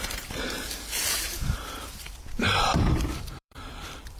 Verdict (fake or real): fake